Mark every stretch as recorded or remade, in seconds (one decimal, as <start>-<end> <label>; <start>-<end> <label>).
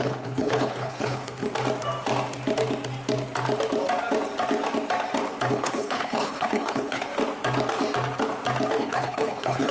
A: 0.0-1.4 remade; 1.4-5.5 recorded; 5.5-7.1 remade; 7.1-8.8 recorded; 8.8-9.7 remade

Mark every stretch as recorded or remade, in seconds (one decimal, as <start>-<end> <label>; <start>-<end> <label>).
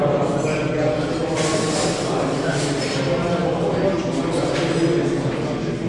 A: 0.0-5.9 recorded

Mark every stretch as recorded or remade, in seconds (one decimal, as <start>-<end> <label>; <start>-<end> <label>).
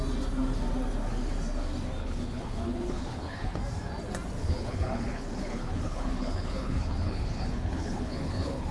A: 0.0-2.0 recorded; 2.0-3.6 remade; 3.6-4.4 recorded; 4.4-8.7 remade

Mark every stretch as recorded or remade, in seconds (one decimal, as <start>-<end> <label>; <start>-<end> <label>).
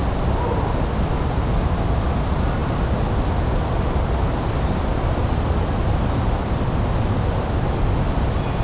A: 0.0-8.6 recorded